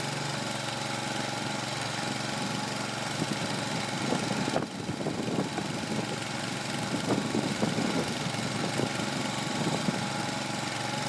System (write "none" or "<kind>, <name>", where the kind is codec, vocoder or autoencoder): none